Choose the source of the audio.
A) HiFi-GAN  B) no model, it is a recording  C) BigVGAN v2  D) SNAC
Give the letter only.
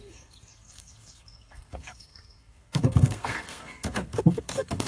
D